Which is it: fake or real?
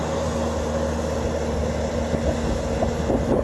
real